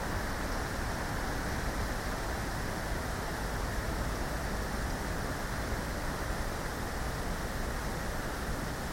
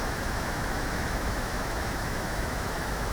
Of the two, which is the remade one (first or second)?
second